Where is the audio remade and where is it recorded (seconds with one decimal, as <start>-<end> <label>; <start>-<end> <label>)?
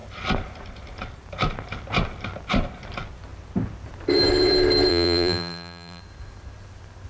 0.0-4.9 recorded; 4.9-6.0 remade; 6.0-7.1 recorded